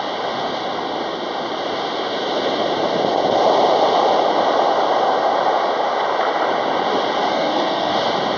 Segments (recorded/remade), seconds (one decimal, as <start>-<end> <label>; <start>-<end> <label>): 0.0-7.3 recorded; 7.3-7.9 remade; 7.9-8.4 recorded